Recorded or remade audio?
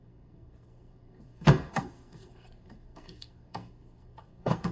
remade